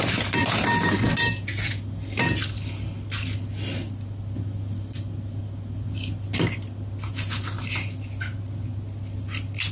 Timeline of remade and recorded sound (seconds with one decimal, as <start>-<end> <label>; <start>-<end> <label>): 0.0-9.7 recorded